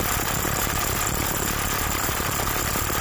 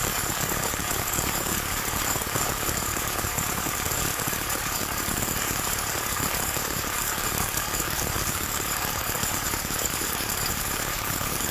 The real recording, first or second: first